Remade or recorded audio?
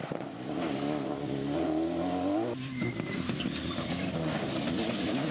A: recorded